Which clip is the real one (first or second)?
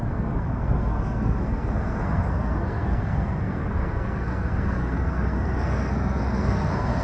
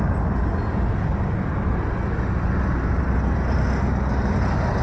second